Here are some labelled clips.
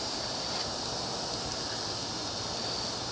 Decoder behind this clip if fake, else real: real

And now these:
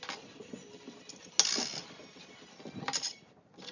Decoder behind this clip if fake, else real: real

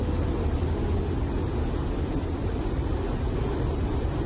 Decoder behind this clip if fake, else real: real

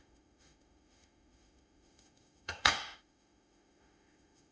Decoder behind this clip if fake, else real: fake, autoencoder, DAC-VAE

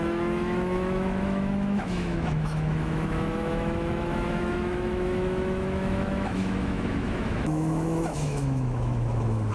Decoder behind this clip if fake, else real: fake, autoencoder, DAC-VAE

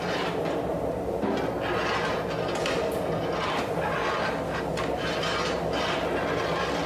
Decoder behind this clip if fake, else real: real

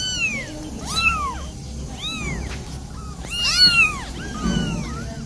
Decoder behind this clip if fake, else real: real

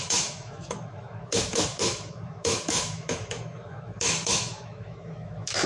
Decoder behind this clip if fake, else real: fake, autoencoder, DAC-VAE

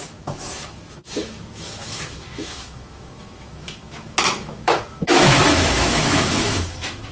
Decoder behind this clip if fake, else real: fake, autoencoder, DAC-VAE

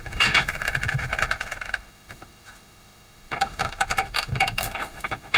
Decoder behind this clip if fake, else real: fake, autoencoder, DAC-VAE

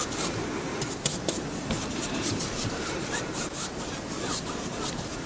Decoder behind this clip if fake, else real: real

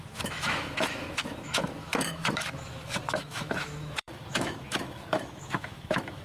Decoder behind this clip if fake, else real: fake, autoencoder, DAC-VAE